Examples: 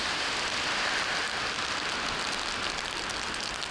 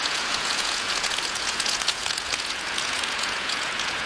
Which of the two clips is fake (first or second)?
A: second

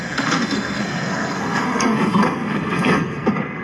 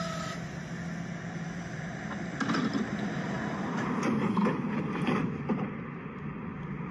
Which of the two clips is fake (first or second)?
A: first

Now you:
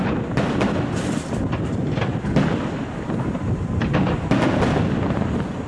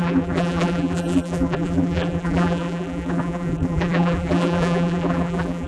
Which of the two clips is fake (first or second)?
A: second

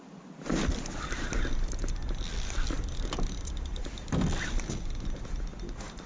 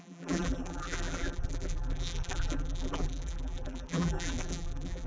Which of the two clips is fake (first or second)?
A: second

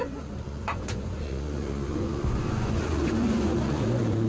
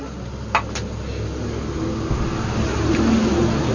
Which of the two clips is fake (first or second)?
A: first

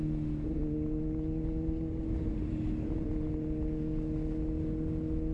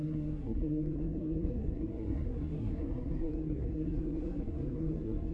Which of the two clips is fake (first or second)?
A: second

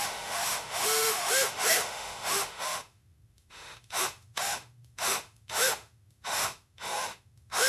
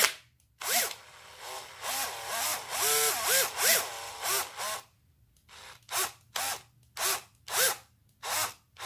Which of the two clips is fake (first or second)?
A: first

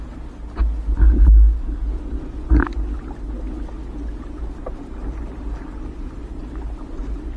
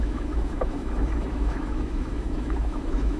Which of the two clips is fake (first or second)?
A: second